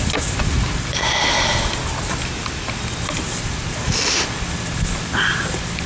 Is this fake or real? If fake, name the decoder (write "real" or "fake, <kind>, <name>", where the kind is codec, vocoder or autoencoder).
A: real